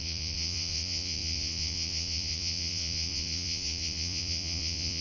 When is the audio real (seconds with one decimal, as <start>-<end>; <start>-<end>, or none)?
none